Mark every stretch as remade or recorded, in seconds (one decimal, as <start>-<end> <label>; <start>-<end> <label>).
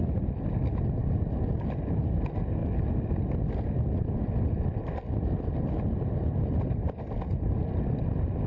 0.0-8.5 recorded